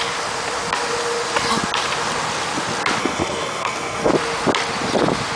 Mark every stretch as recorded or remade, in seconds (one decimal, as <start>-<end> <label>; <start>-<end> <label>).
0.0-3.0 recorded; 3.0-4.1 remade; 4.1-5.4 recorded